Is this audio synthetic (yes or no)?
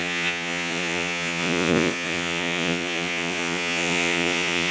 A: yes